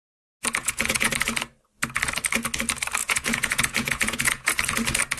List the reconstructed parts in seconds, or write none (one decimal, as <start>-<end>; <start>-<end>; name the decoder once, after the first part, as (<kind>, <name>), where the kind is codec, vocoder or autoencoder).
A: 0.6-1.1 (vocoder, Vocos); 3.0-4.6